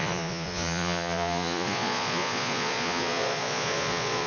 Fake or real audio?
fake